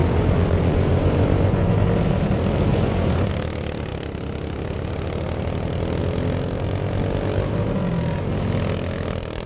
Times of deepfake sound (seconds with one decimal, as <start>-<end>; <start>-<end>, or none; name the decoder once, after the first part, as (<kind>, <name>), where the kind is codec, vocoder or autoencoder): 0.0-1.7 (vocoder, Vocos); 2.7-3.3